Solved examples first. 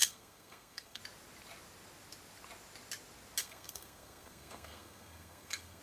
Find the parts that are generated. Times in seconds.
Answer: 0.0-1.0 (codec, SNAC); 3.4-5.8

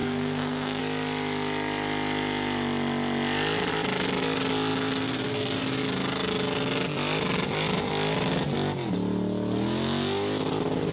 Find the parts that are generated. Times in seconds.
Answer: 0.0-0.8 (codec, SNAC)